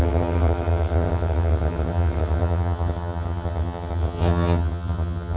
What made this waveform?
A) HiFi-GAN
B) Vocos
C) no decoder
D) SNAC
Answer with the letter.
A